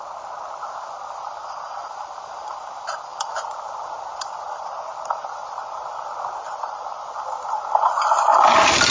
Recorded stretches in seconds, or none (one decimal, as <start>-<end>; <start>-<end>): 0.0-8.9